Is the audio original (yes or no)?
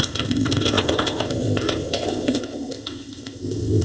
no